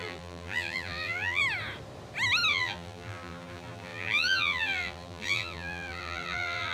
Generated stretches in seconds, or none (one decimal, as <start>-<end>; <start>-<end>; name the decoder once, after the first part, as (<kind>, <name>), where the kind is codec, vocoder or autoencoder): 0.0-1.4 (vocoder, BigVGAN v2); 2.5-6.7

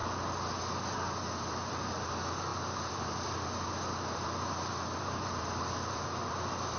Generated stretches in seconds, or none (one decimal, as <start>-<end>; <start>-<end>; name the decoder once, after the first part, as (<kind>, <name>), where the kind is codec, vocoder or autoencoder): 0.8-6.8 (vocoder, BigVGAN v2)

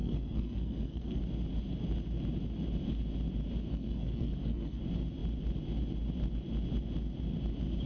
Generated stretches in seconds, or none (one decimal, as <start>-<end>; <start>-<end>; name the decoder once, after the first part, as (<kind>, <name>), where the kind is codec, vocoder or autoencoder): 0.0-1.2 (codec, SNAC); 3.7-4.8

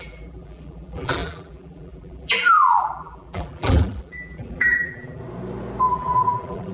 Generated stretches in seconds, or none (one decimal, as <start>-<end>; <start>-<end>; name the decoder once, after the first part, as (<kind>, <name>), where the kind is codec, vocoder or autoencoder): 0.0-5.2 (vocoder, BigVGAN v2); 5.9-6.7

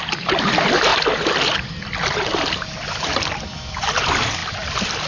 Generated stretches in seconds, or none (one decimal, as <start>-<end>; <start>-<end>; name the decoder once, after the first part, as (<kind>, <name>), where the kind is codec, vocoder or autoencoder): 0.0-0.9 (vocoder, BigVGAN v2); 3.1-5.1

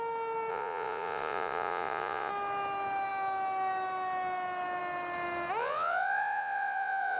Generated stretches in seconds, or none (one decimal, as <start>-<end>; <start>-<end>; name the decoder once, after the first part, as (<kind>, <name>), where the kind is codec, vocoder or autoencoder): 0.5-2.3 (vocoder, Vocos); 5.6-7.2

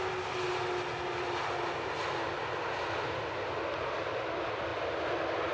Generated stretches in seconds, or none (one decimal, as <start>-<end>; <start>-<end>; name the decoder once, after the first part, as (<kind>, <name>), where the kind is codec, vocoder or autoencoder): 4.7-5.5 (vocoder, BigVGAN v2)

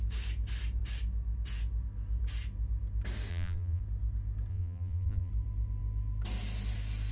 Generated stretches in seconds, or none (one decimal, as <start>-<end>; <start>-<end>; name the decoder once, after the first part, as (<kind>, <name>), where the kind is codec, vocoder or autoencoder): 3.3-3.8 (vocoder, BigVGAN v2); 4.5-5.3